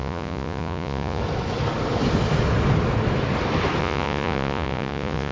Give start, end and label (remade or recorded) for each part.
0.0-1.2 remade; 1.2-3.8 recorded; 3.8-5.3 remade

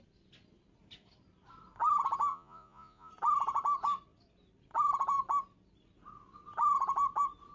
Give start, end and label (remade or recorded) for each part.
0.0-2.3 recorded; 2.3-3.1 remade; 3.1-7.5 recorded

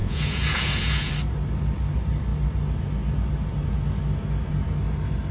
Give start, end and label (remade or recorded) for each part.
0.0-1.1 remade; 1.1-5.3 recorded